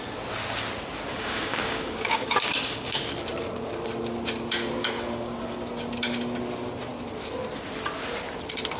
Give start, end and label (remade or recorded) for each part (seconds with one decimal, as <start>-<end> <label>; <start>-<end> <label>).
0.0-1.1 recorded; 1.1-3.0 remade; 3.0-4.8 recorded; 4.8-5.4 remade; 5.4-8.8 recorded